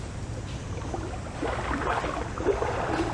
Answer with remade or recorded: recorded